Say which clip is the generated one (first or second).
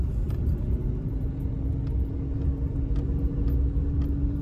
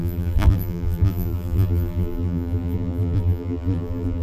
second